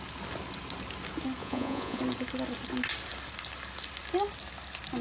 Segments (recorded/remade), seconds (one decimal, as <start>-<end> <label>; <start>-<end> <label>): 0.0-1.4 recorded; 1.4-2.0 remade; 2.0-5.0 recorded